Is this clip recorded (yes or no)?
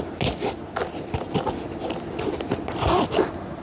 yes